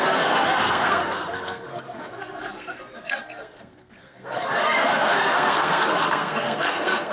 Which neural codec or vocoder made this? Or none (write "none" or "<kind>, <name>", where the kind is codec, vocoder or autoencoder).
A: codec, SNAC